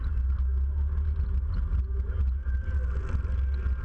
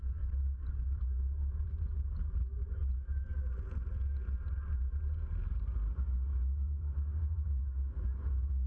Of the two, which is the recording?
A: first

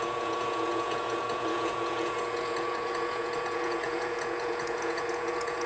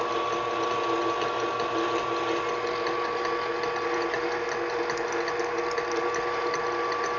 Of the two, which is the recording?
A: second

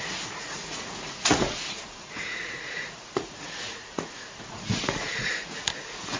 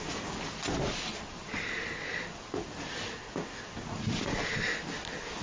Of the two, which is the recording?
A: second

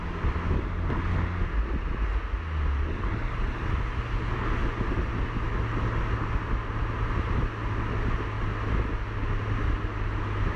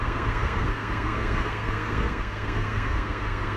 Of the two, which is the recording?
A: first